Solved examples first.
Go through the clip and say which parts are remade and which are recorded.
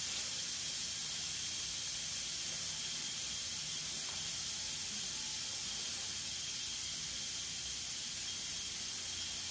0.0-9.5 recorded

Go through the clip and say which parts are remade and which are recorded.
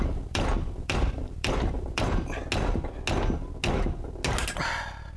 0.0-2.4 remade; 2.4-5.2 recorded